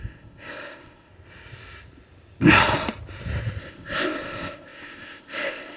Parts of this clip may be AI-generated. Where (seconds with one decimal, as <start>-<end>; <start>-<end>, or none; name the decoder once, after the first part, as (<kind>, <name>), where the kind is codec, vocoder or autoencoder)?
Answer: 0.0-1.1 (codec, ZipCodec); 3.6-5.8